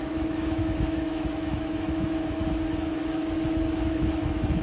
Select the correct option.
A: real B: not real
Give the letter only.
B